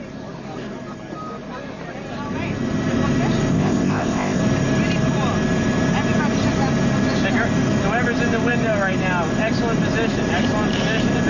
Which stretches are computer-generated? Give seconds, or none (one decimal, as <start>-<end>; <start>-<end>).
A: 3.5-4.4